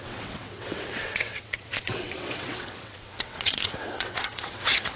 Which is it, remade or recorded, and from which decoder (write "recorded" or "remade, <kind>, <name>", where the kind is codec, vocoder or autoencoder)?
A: remade, vocoder, WaveNeXt